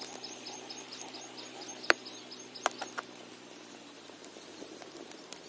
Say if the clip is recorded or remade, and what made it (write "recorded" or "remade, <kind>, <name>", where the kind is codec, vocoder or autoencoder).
recorded